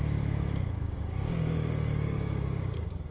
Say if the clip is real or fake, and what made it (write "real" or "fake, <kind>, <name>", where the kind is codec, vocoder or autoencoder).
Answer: fake, codec, DAC